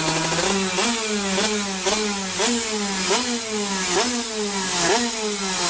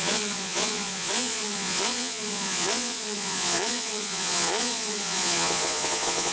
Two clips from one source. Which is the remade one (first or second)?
second